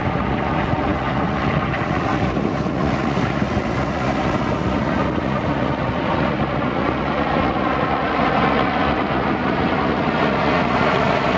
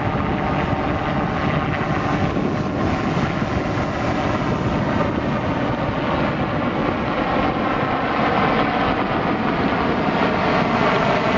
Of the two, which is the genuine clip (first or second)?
second